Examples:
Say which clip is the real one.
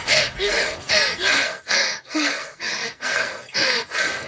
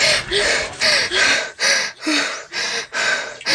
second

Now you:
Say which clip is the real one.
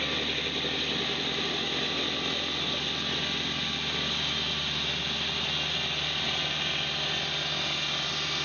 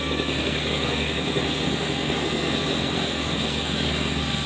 first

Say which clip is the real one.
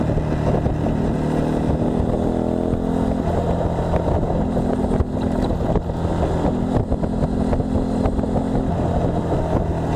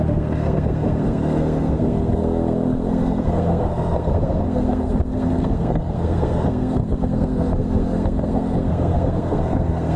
first